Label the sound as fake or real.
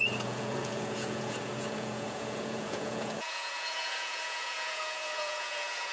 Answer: fake